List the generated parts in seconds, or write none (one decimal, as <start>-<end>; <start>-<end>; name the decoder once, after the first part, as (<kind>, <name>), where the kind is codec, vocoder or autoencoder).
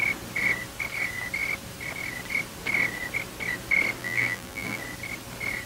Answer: 4.0-4.8 (vocoder, BigVGAN v2)